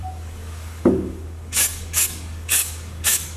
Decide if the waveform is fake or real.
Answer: fake